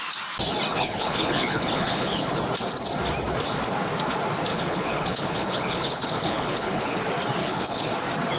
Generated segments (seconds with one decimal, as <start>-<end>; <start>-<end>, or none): 0.7-2.4; 4.5-7.0; 7.4-7.9